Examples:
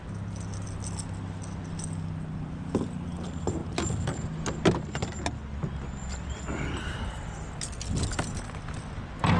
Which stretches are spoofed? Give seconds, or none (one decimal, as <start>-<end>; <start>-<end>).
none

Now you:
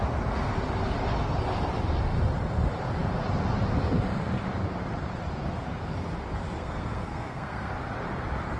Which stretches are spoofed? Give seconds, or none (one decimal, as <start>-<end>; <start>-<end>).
6.6-7.7

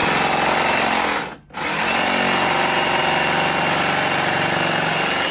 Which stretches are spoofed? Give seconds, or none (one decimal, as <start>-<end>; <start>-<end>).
none